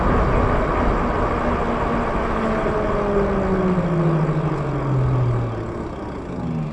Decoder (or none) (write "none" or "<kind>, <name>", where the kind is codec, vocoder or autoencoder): none